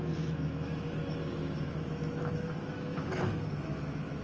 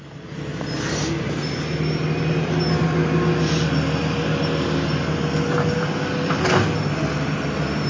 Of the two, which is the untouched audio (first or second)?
second